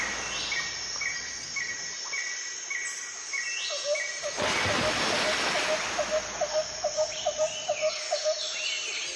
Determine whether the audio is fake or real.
real